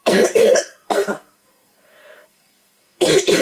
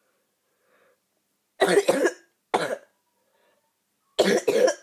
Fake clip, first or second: first